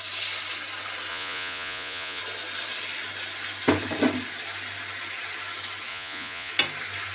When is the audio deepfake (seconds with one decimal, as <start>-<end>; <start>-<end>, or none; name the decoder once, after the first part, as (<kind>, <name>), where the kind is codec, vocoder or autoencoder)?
1.1-2.2 (vocoder, Vocos); 5.9-6.5